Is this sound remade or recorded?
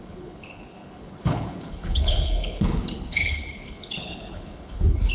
remade